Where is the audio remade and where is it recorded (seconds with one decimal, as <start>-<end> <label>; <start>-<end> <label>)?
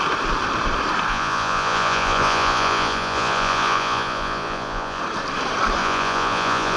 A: 0.0-1.1 recorded; 1.1-5.0 remade; 5.0-5.8 recorded; 5.8-6.8 remade